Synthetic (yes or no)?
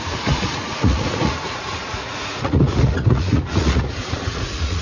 yes